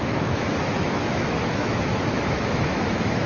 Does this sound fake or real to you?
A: fake